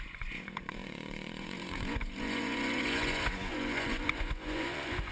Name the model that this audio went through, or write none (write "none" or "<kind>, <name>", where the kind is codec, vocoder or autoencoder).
vocoder, Vocos